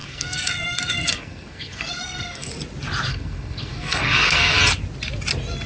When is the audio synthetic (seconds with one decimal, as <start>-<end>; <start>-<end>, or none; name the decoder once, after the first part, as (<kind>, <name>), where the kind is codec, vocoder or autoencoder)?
0.0-2.5 (codec, SNAC); 3.1-4.6